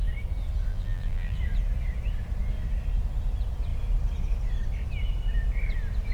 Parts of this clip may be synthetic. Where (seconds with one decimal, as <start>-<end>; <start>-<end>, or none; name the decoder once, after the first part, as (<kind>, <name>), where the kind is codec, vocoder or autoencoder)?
0.7-1.4 (vocoder, BigVGAN v2)